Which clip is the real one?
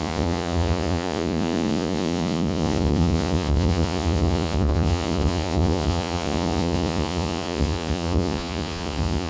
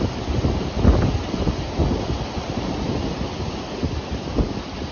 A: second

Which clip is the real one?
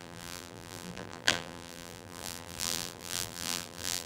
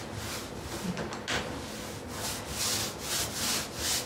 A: second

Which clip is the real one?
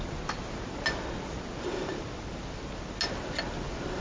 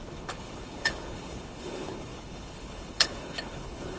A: first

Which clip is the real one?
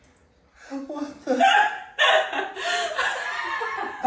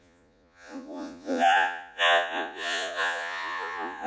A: first